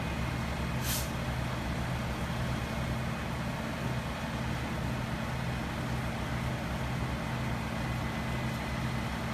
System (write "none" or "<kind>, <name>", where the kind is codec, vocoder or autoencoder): none